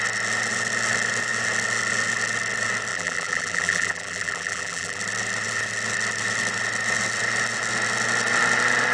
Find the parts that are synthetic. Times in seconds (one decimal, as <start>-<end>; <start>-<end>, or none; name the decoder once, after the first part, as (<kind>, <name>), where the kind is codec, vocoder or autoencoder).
2.9-5.0 (vocoder, BigVGAN v2)